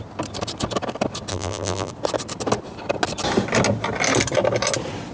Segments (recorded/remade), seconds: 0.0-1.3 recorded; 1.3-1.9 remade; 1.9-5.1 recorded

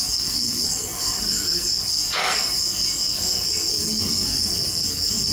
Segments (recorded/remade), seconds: 0.0-5.3 remade

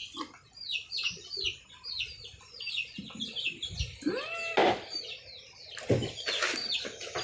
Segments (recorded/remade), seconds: 0.0-7.2 recorded